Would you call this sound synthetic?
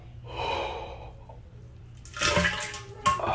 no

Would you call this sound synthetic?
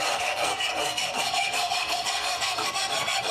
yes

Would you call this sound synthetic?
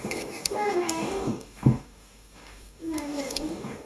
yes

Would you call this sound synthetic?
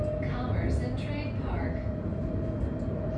no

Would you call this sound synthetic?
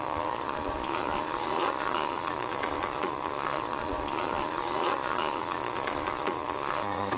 yes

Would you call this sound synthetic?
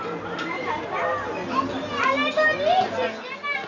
no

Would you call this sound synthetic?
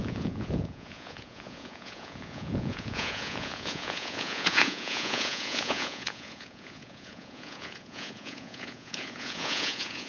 yes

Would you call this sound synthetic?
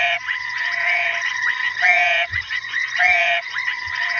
yes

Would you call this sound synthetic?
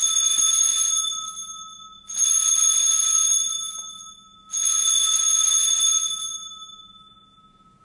no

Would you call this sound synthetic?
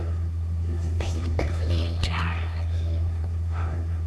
yes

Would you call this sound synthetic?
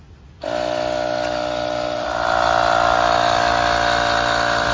no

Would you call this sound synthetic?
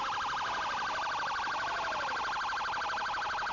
no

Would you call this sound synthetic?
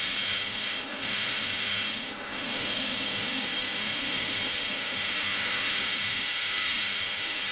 yes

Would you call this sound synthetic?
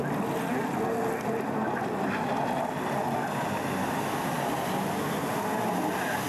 no